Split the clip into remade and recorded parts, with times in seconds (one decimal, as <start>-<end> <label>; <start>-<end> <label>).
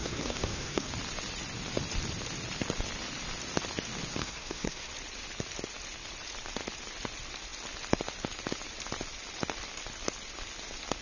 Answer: 0.0-0.9 remade; 0.9-4.2 recorded; 4.2-4.9 remade; 4.9-11.0 recorded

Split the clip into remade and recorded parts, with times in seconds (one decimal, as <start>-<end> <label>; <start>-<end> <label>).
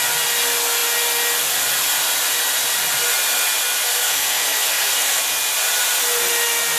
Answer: 0.0-3.9 recorded; 3.9-5.2 remade; 5.2-6.8 recorded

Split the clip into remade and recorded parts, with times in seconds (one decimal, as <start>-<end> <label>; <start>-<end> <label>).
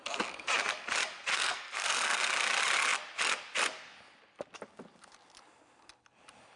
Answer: 0.0-1.3 recorded; 1.3-2.3 remade; 2.3-6.6 recorded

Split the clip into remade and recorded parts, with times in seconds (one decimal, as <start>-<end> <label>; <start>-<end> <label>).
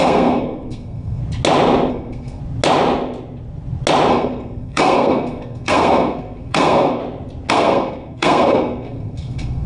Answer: 0.0-1.2 remade; 1.2-1.9 recorded; 1.9-2.4 remade; 2.4-4.1 recorded; 4.1-7.0 remade; 7.0-7.5 recorded; 7.5-9.7 remade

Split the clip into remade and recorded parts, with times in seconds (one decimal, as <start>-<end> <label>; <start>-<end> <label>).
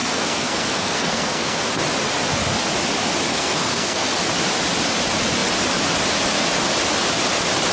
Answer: 0.0-1.6 remade; 1.6-3.3 recorded; 3.3-4.2 remade; 4.2-7.7 recorded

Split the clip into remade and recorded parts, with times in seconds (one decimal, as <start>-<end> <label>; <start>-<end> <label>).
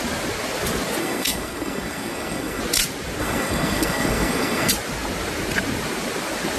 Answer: 0.0-1.0 recorded; 1.0-2.6 remade; 2.6-3.2 recorded; 3.2-4.7 remade; 4.7-6.6 recorded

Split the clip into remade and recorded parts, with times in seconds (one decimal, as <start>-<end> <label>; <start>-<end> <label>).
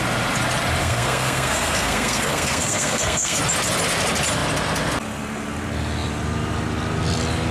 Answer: 0.0-0.8 recorded; 0.8-3.4 remade; 3.4-7.5 recorded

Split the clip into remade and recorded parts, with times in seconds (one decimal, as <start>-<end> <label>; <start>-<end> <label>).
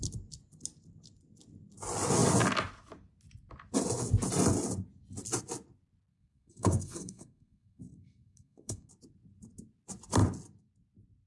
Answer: 0.0-6.1 recorded; 6.1-8.9 remade; 8.9-11.3 recorded